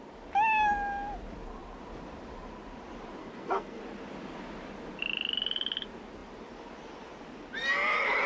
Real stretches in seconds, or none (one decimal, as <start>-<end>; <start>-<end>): 0.0-3.2; 3.8-8.3